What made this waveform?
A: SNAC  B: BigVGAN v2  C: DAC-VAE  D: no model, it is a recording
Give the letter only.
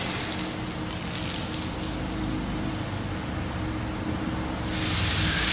D